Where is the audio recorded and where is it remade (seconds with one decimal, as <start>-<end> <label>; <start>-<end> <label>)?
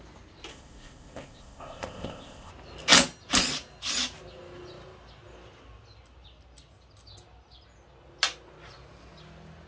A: 0.0-0.5 recorded; 0.5-2.5 remade; 2.5-9.7 recorded